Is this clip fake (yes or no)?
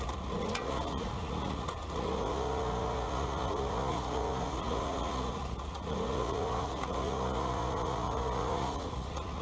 yes